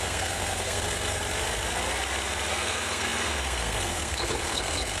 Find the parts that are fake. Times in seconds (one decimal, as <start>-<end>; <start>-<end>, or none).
0.0-1.2; 2.5-5.0